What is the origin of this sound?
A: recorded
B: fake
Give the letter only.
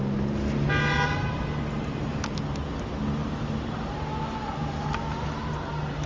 A